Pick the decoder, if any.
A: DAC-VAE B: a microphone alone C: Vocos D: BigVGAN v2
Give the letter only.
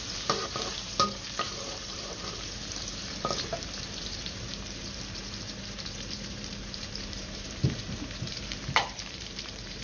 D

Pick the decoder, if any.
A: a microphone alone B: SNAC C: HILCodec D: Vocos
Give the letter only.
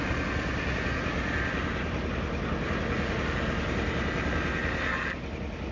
A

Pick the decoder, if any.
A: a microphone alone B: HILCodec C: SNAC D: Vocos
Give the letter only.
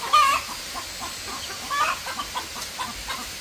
A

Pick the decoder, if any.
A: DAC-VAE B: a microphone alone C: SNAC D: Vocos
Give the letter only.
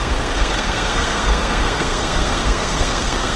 C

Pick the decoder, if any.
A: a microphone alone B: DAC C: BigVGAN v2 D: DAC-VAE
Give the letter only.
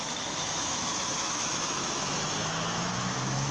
D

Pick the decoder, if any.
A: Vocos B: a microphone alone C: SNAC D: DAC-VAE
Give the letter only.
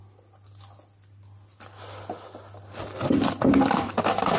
B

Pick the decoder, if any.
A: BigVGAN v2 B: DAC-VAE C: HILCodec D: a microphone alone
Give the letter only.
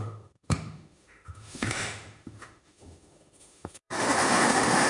B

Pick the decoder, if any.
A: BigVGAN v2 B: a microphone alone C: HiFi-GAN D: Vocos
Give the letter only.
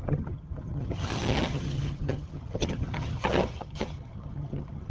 C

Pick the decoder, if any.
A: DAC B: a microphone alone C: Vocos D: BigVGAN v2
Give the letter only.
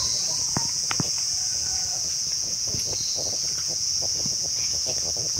C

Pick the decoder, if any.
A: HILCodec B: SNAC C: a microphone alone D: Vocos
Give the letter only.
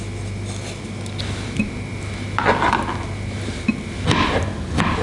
C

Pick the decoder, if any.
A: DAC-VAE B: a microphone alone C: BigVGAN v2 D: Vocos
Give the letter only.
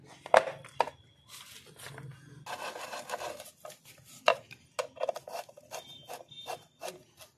B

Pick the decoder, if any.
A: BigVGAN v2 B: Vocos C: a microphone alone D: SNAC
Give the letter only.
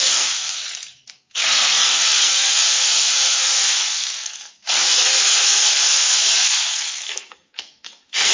D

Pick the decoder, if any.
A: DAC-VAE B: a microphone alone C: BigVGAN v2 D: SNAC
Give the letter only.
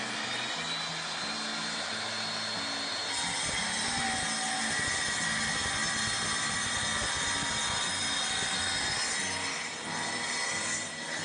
B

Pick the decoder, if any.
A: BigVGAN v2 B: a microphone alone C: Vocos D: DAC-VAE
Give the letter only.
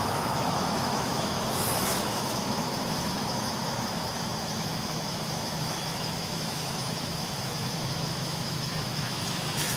D